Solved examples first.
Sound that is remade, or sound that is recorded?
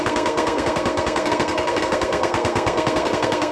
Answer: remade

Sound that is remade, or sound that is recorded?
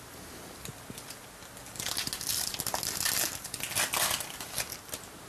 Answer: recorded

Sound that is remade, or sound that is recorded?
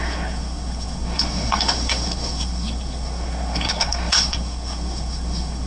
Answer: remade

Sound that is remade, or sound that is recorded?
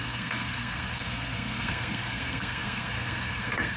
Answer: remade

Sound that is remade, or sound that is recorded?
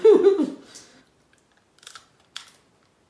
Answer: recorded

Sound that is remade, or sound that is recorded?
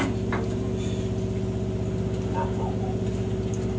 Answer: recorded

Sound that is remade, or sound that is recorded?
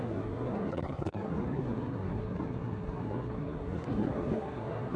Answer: remade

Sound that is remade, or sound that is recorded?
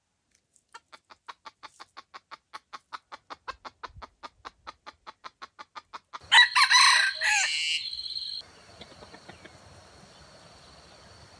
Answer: recorded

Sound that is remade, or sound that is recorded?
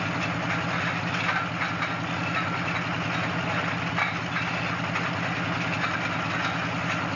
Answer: recorded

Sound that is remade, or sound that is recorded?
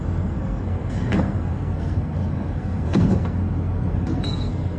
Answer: remade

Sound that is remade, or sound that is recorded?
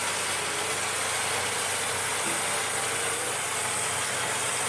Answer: recorded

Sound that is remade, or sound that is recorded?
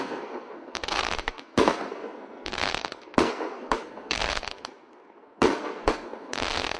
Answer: remade